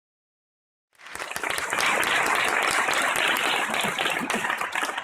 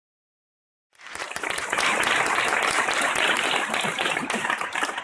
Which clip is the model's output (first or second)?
second